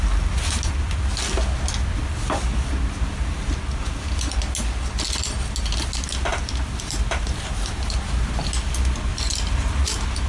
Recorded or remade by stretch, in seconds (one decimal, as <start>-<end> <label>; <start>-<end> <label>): 0.0-6.3 recorded; 6.3-8.4 remade; 8.4-9.1 recorded; 9.1-10.3 remade

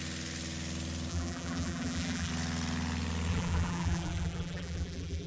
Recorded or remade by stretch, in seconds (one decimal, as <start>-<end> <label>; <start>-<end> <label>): 0.0-1.1 recorded; 1.1-2.3 remade; 2.3-3.3 recorded; 3.3-5.3 remade

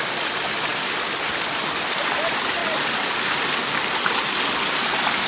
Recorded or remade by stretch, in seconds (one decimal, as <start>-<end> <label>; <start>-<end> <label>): 0.0-0.7 recorded; 0.7-2.1 remade; 2.1-5.3 recorded

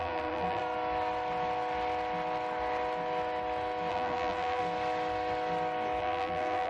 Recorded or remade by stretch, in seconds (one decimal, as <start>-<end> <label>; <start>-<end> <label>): 0.0-0.6 remade; 0.6-3.9 recorded; 3.9-4.6 remade; 4.6-6.0 recorded; 6.0-6.7 remade

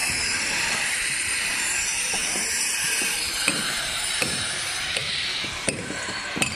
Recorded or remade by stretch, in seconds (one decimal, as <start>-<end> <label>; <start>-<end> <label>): 0.0-0.7 recorded; 0.7-6.6 remade

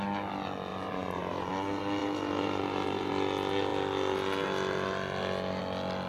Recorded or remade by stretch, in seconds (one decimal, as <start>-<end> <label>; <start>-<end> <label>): 0.0-0.7 recorded; 0.7-1.5 remade; 1.5-2.0 recorded; 2.0-3.1 remade; 3.1-6.1 recorded

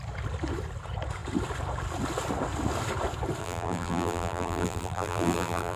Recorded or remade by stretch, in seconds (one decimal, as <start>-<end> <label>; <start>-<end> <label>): 0.0-3.4 recorded; 3.4-5.8 remade

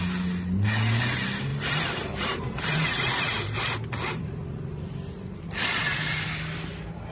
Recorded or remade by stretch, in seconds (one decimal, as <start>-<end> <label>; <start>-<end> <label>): 0.0-1.5 recorded; 1.5-5.8 remade; 5.8-7.1 recorded